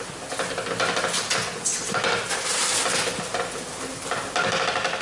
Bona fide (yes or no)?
yes